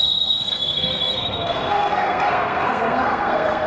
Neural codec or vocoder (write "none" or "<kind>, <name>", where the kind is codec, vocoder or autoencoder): codec, SNAC